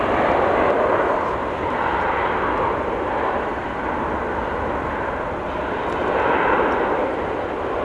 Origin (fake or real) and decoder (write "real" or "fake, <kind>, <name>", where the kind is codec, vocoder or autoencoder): real